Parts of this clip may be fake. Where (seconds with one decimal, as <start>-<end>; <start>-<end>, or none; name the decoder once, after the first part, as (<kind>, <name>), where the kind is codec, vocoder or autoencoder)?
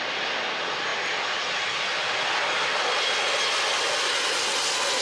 none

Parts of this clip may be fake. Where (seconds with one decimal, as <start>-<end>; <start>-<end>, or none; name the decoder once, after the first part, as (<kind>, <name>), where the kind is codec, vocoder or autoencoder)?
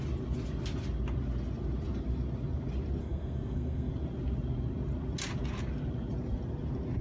3.0-3.9 (codec, SNAC)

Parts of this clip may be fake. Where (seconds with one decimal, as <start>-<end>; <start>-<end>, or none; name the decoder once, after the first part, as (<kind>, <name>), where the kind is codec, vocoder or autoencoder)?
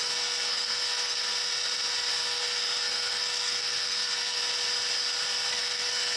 0.0-1.3 (codec, SNAC); 2.1-4.4; 5.5-6.2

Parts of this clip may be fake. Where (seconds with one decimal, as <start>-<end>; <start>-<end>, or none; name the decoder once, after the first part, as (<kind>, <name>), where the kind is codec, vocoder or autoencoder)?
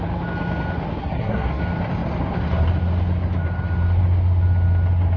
1.0-1.6 (codec, SNAC)